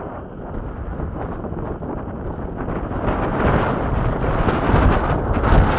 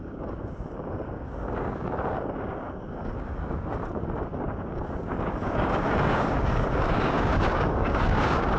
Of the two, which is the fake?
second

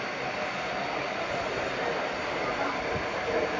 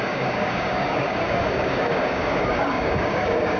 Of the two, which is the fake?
second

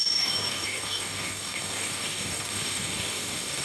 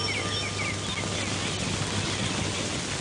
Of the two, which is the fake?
first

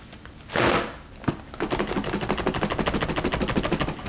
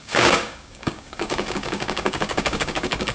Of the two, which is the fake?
second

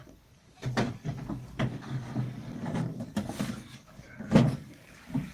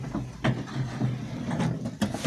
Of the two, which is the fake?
first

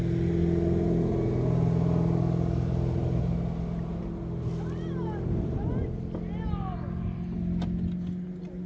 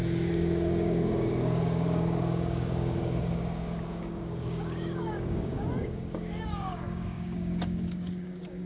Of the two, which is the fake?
second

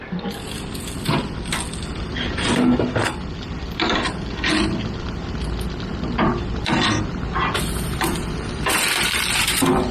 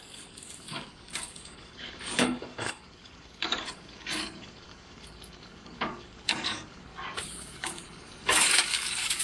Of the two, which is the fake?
second